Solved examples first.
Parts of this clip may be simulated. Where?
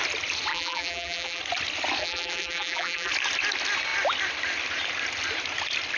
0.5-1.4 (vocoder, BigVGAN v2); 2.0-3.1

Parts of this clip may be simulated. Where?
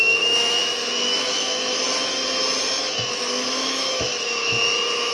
0.0-2.2 (autoencoder, DAC-VAE); 2.8-5.1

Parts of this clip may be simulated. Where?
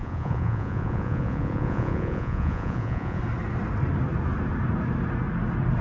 0.0-3.2 (vocoder, Vocos)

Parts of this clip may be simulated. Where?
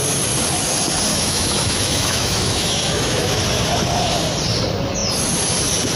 1.1-3.4 (autoencoder, DAC-VAE)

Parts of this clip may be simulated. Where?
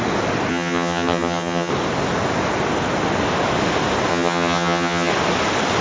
0.5-1.7 (vocoder, HiFi-GAN); 4.1-5.1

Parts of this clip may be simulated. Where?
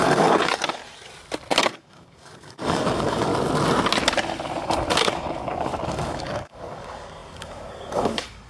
0.0-0.8 (codec, DAC); 1.6-3.3; 4.6-8.5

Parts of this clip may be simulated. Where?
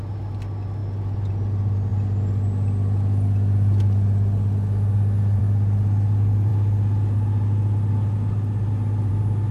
none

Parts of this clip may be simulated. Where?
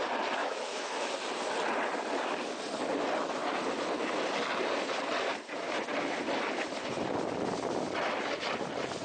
0.4-1.1 (autoencoder, DAC-VAE)